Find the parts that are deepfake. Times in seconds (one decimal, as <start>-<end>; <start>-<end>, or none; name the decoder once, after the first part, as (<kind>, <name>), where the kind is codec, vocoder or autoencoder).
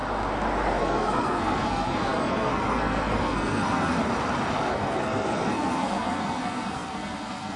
0.8-4.0 (codec, SNAC); 4.7-7.6